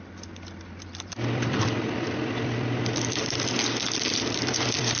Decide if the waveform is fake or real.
fake